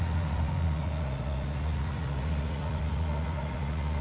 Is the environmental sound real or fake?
fake